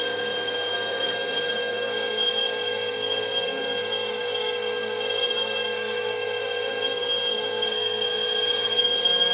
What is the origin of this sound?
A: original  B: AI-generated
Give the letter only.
B